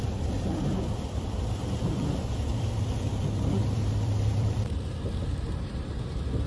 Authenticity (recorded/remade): remade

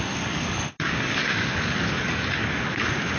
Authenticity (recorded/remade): remade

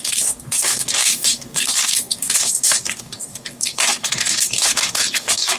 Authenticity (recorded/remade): remade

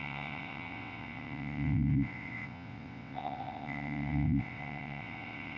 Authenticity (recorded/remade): remade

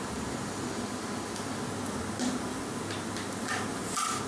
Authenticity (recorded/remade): recorded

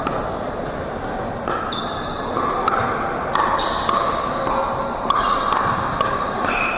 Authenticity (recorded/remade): recorded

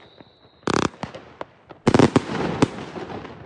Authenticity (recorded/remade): recorded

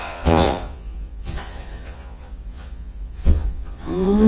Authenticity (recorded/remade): remade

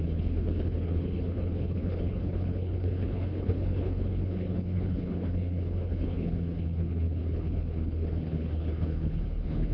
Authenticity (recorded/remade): remade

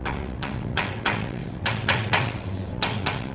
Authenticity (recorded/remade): remade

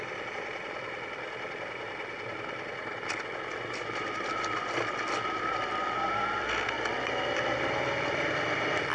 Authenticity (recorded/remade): recorded